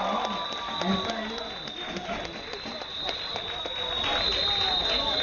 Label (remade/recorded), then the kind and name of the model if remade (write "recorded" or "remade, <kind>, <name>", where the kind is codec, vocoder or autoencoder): recorded